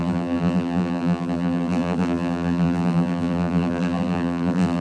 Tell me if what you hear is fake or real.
fake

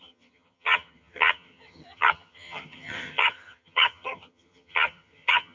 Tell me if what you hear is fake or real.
fake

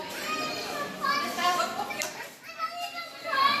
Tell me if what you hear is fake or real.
fake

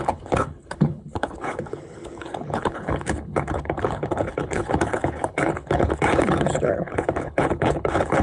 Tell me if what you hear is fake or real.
fake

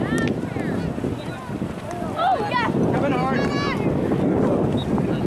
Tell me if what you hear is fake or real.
real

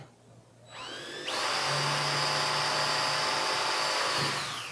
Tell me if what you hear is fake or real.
real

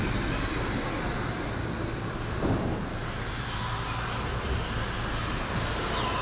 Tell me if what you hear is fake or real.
real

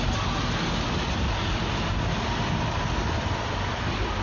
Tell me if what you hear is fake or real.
real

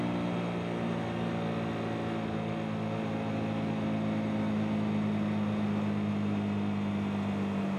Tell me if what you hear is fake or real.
real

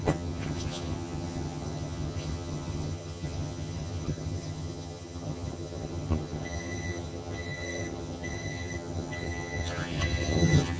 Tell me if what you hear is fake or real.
fake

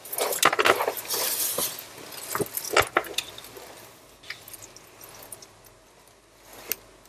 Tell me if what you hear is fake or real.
real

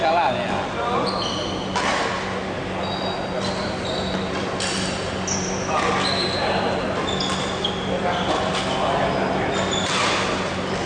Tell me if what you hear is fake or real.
real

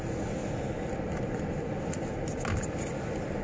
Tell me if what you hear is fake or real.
real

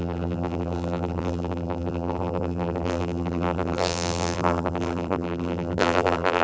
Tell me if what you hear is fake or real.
fake